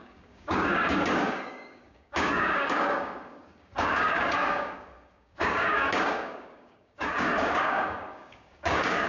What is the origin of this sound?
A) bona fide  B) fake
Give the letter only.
B